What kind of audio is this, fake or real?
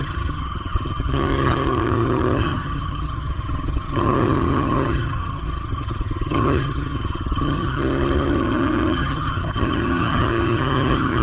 fake